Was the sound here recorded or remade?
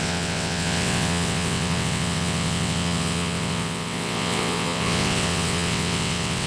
remade